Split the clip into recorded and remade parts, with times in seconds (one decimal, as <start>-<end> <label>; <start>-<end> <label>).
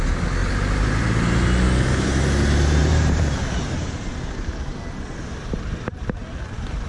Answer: 0.0-2.8 recorded; 2.8-4.1 remade; 4.1-6.9 recorded